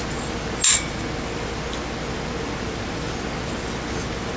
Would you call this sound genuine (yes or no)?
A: yes